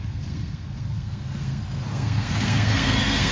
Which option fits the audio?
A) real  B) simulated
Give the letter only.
B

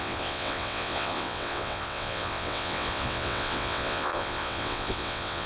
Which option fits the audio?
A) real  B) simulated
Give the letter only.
B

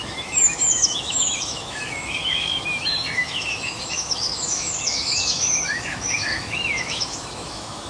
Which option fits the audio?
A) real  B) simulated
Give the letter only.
B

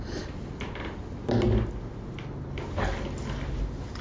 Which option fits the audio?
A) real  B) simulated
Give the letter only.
A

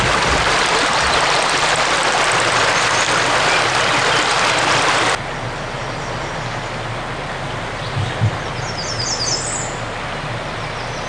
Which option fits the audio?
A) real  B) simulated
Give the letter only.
A